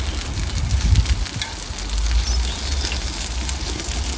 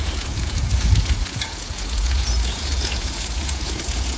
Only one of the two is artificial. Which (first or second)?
second